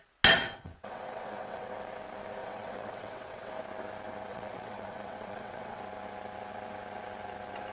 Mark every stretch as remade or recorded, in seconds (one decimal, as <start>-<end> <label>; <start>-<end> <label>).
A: 0.0-0.4 recorded; 0.4-1.7 remade; 1.7-2.4 recorded; 2.4-3.5 remade; 3.5-4.3 recorded; 4.3-5.8 remade; 5.8-7.7 recorded